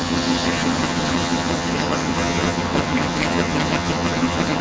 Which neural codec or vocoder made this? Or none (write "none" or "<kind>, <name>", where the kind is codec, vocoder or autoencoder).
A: vocoder, HiFi-GAN